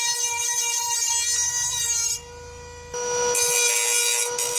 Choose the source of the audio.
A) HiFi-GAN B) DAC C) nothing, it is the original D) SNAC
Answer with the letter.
C